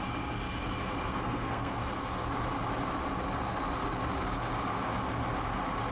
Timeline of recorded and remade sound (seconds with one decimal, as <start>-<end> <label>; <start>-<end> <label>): 0.0-1.1 recorded; 1.1-1.8 remade; 1.8-5.9 recorded